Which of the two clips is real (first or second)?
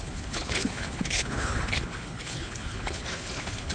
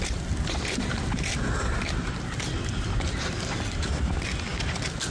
second